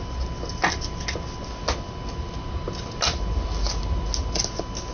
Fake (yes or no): no